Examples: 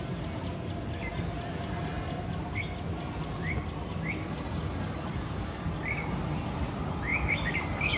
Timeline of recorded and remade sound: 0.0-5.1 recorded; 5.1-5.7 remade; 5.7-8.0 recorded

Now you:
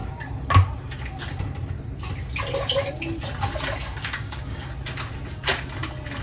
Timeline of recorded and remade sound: 0.0-4.0 recorded; 4.0-4.7 remade; 4.7-6.2 recorded

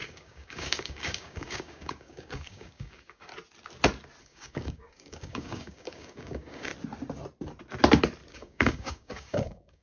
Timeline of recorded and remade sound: 0.0-3.3 remade; 3.3-4.2 recorded; 4.2-6.7 remade; 6.7-8.3 recorded; 8.3-9.8 remade

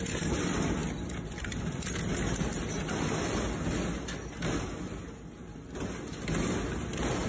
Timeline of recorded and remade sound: 0.0-7.3 recorded

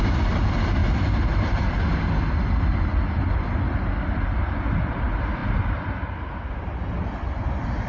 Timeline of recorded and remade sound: 0.0-7.9 recorded